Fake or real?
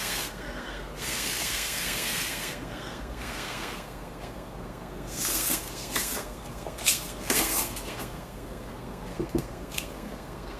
fake